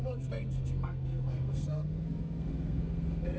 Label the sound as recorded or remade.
remade